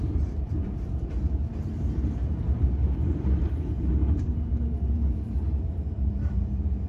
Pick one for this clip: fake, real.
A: fake